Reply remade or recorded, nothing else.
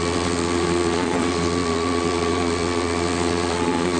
remade